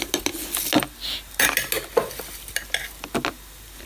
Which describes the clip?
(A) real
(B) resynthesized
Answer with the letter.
A